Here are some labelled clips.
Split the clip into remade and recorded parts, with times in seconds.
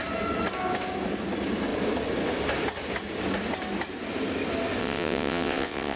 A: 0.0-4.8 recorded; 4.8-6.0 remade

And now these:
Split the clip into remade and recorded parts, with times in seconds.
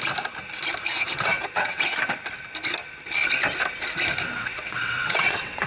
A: 0.0-1.3 recorded; 1.3-1.8 remade; 1.8-4.4 recorded; 4.4-5.7 remade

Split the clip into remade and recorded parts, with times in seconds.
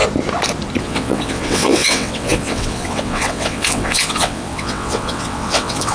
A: 0.0-0.8 recorded; 0.8-5.9 remade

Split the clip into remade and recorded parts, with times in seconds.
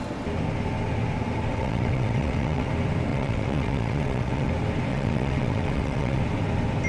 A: 0.0-1.5 recorded; 1.5-2.7 remade; 2.7-3.1 recorded; 3.1-4.5 remade; 4.5-4.9 recorded; 4.9-6.2 remade; 6.2-6.9 recorded